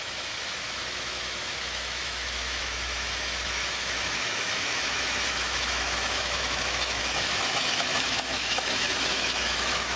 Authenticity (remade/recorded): remade